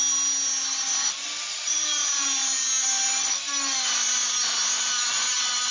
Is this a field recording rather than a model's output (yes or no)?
yes